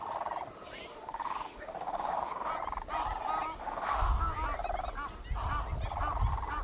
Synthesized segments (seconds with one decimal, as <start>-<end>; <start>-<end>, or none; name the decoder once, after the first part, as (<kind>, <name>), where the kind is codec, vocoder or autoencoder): 0.9-2.5 (autoencoder, DAC-VAE); 3.6-4.1